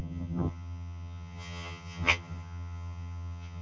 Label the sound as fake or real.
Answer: fake